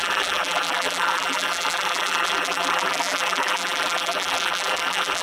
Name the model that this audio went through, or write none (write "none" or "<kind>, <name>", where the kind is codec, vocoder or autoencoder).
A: vocoder, BigVGAN v2